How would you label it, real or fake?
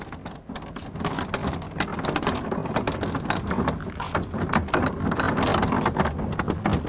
real